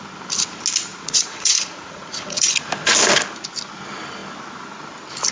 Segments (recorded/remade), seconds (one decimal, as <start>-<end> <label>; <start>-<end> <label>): 0.0-0.9 recorded; 0.9-2.6 remade; 2.6-5.3 recorded